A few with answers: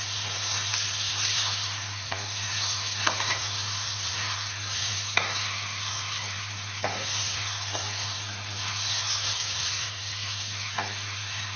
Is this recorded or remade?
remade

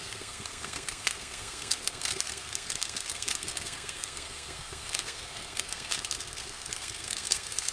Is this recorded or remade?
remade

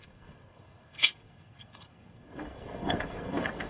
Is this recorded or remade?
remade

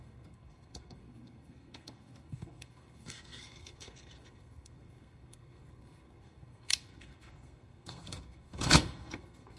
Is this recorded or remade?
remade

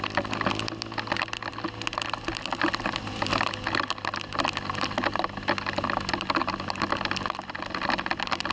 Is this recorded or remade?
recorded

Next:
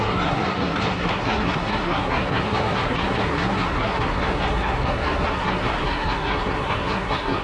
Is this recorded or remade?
remade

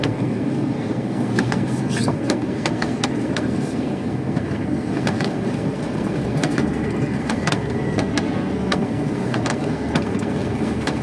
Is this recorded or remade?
remade